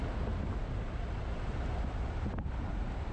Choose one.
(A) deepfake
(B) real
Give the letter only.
B